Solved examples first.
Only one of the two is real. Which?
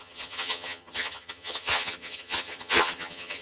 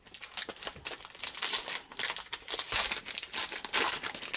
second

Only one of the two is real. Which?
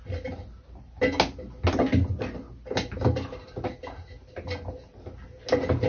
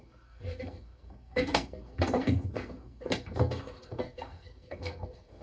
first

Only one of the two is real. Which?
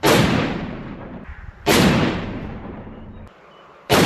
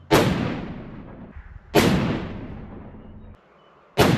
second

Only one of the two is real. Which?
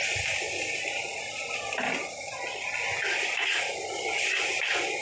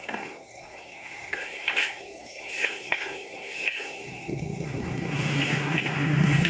first